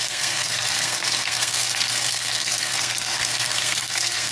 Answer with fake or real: fake